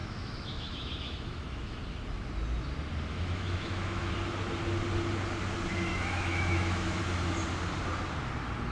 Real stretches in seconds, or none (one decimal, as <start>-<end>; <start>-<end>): 1.8-3.1; 4.1-5.9; 7.0-8.7